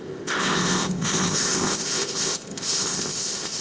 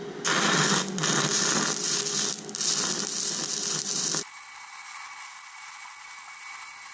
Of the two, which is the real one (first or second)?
second